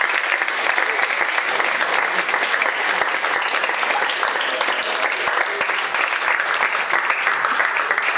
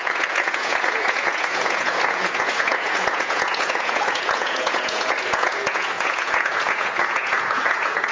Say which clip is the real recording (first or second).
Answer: first